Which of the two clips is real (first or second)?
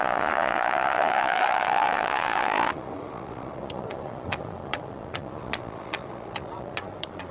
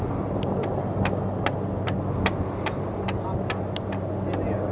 second